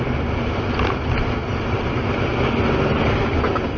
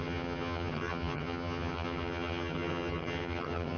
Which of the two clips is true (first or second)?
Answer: first